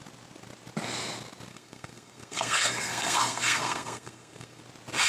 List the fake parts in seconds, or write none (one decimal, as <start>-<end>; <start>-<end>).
1.5-4.6